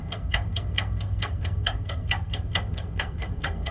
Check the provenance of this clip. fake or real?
fake